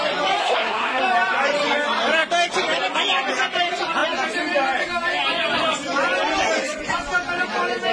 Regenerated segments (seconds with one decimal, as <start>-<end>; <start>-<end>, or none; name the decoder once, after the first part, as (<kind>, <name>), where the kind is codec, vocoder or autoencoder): 0.4-1.0 (codec, SNAC)